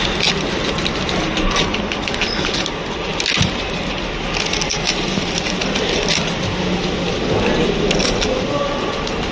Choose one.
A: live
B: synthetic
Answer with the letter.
A